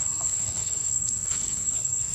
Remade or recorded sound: remade